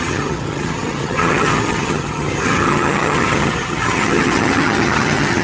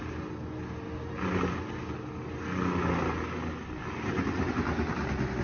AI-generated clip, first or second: first